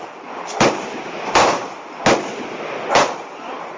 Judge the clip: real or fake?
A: real